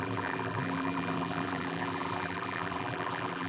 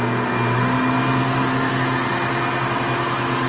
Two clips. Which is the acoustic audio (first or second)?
second